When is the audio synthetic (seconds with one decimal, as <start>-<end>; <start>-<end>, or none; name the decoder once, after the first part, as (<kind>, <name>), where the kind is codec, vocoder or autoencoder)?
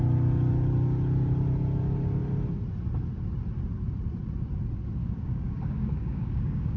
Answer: 5.0-6.8 (codec, DAC)